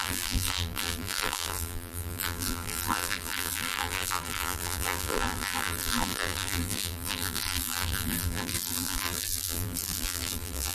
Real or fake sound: fake